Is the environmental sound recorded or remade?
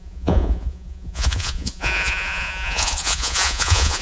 remade